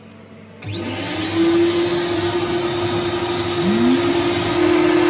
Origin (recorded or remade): recorded